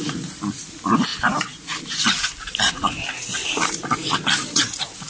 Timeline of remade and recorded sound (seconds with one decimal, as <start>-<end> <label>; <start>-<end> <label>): 0.0-5.1 recorded